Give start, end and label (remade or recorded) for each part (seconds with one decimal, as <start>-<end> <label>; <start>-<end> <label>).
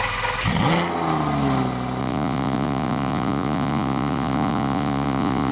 0.0-2.0 recorded; 2.0-5.5 remade